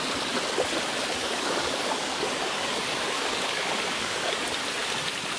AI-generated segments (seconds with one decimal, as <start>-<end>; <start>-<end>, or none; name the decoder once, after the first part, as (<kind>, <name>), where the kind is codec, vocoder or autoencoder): 1.2-4.4 (codec, DAC)